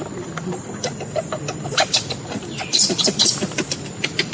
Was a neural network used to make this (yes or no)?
yes